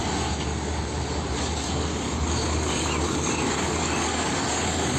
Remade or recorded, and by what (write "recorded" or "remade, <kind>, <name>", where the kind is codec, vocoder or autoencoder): remade, codec, DAC